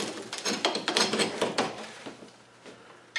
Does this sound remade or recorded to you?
recorded